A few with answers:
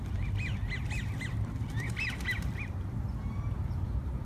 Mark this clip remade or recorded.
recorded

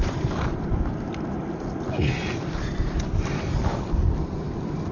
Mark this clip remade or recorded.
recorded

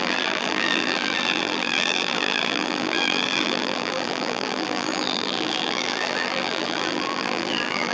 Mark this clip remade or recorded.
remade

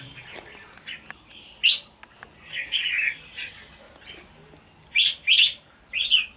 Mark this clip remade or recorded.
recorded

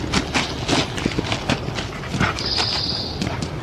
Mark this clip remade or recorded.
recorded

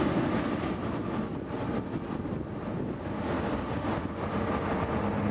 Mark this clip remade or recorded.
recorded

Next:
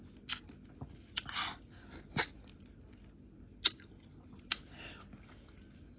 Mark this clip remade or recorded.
recorded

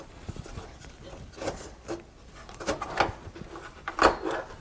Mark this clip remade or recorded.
recorded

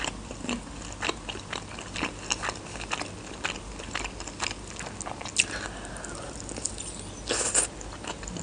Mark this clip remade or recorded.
recorded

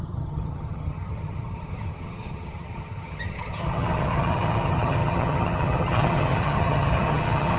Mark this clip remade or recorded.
remade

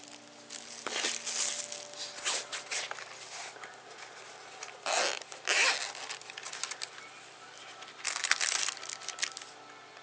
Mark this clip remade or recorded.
recorded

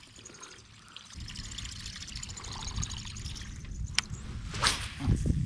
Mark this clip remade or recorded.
recorded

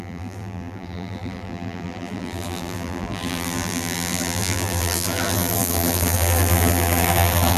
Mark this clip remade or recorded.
remade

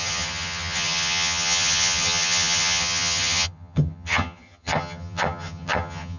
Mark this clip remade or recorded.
remade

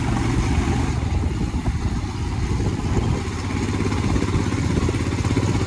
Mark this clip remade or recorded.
recorded